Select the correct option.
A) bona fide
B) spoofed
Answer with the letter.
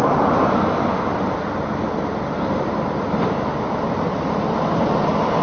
A